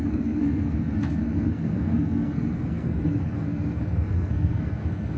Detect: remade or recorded remade